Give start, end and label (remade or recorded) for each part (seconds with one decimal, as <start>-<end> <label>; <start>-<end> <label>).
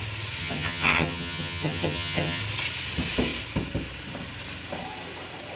0.0-0.4 recorded; 0.4-2.4 remade; 2.4-5.6 recorded